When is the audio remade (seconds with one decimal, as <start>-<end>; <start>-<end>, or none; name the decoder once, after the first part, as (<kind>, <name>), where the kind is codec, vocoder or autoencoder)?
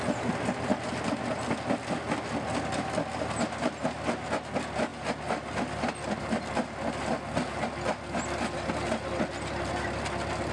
none